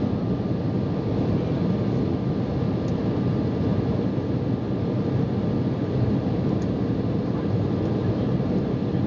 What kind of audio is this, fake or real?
real